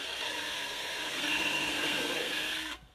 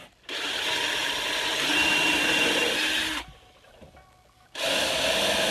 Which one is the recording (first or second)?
second